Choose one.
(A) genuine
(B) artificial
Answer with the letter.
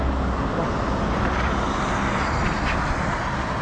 A